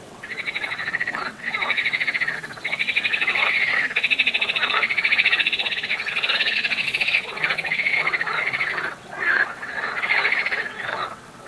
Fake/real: fake